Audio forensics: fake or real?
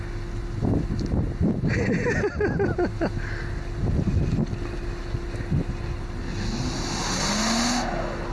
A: real